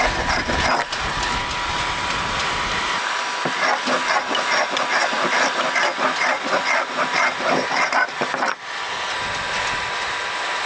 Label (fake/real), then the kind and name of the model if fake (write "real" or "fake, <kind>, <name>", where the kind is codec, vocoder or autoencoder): real